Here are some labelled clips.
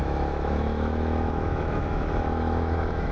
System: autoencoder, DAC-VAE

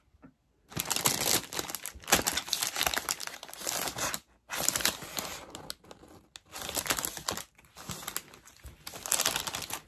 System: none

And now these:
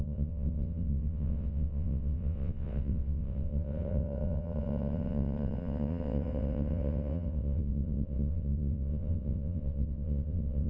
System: vocoder, WaveNeXt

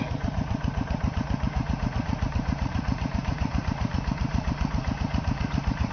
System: vocoder, Vocos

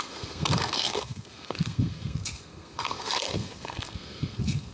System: codec, SNAC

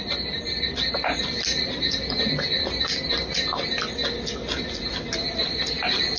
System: none